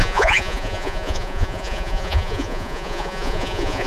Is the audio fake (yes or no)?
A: yes